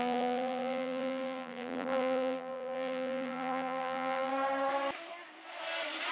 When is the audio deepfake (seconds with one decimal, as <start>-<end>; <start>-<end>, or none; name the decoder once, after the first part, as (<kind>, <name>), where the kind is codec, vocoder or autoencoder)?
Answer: 0.0-4.3 (vocoder, BigVGAN v2)